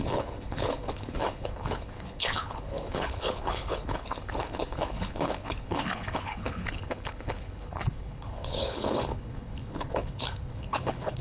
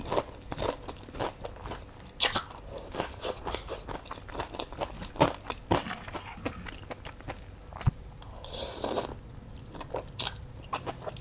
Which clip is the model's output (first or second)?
first